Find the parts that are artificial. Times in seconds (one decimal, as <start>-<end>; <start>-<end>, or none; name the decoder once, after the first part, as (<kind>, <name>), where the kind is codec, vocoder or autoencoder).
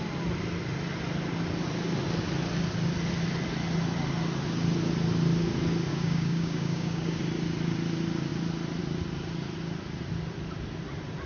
5.9-7.2 (codec, DAC)